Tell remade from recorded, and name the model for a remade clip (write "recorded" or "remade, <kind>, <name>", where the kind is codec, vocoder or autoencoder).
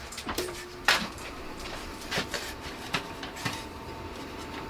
remade, vocoder, BigVGAN v2